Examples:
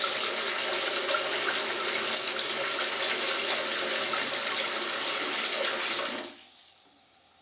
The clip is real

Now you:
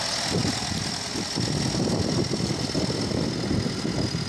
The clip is real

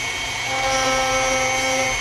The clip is fake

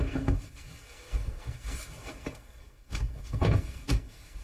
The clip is fake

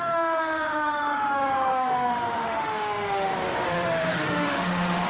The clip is fake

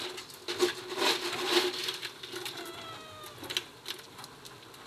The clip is real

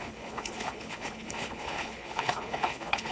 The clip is fake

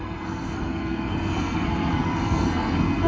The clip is fake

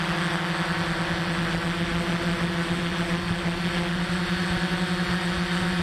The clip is real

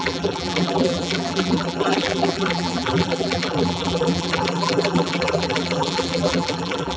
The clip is fake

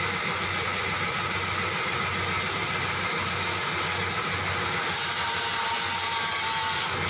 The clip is real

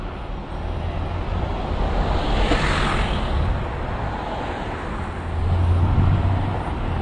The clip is real